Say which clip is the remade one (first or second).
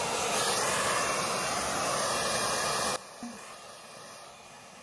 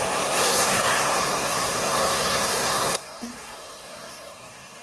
second